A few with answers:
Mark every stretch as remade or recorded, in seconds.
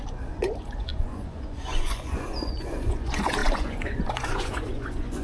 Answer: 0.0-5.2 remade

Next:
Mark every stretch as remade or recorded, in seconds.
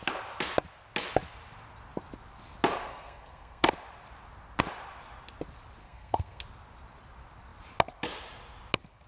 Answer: 0.0-2.9 recorded; 2.9-3.7 remade; 3.7-5.8 recorded; 5.8-6.4 remade; 6.4-9.1 recorded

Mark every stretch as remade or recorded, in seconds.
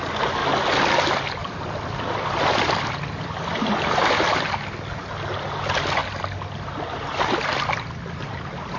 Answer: 0.0-1.4 recorded; 1.4-4.1 remade; 4.1-8.8 recorded